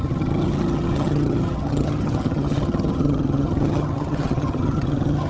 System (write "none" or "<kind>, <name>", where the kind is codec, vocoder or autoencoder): vocoder, HiFi-GAN